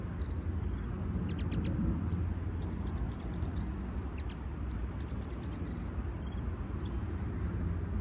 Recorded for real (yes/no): yes